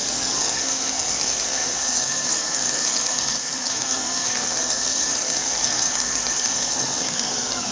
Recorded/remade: remade